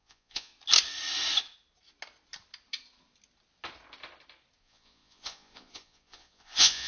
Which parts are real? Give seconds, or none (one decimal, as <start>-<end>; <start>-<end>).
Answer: 0.5-4.6